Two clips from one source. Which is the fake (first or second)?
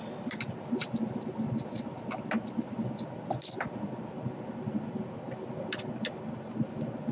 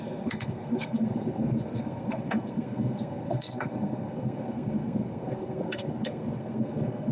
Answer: second